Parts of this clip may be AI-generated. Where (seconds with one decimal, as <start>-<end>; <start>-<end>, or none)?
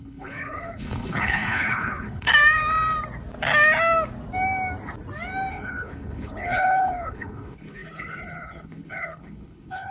0.0-2.3; 5.5-9.9